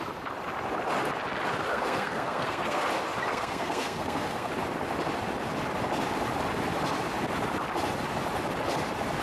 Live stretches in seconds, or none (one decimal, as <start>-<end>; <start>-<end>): 0.0-1.7; 2.8-3.3; 4.5-9.2